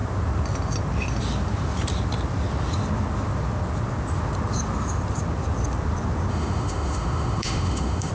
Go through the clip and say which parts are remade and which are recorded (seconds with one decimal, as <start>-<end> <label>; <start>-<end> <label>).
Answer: 0.0-6.3 recorded; 6.3-8.1 remade